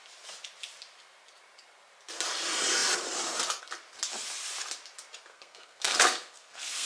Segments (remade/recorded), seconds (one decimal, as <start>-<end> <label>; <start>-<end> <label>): 0.0-5.3 recorded; 5.3-6.9 remade